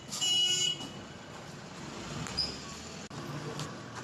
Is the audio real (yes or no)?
yes